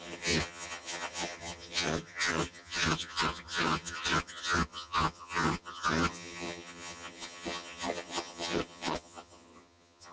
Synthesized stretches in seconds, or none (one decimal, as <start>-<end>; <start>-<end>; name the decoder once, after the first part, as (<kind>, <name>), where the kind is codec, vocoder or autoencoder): 0.0-10.1 (vocoder, HiFi-GAN)